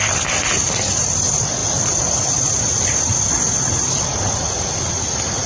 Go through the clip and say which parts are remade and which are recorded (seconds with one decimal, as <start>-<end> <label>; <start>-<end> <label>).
0.0-5.5 recorded